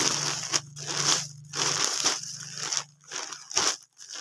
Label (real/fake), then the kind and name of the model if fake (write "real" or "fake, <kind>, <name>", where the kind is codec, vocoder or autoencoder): real